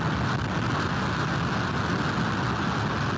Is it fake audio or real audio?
real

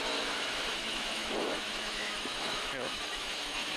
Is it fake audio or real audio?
fake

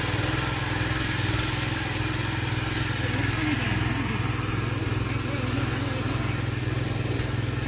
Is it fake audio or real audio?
real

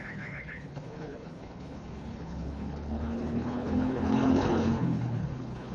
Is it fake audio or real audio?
fake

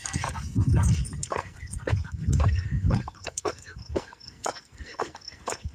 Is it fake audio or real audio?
fake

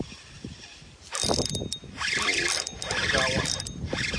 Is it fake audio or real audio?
real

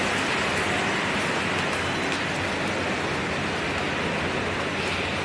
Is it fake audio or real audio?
real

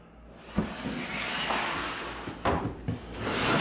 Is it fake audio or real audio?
real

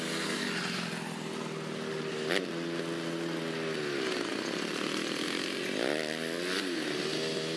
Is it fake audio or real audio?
real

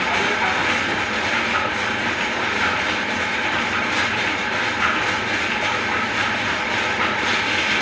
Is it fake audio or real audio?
real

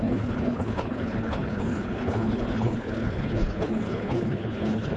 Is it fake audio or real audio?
fake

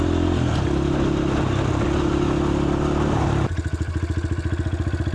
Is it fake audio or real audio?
real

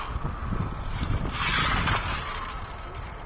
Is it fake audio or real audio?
real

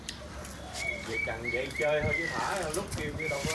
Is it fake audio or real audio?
fake